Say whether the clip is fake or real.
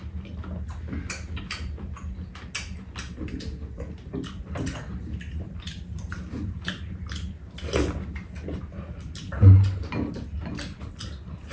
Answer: real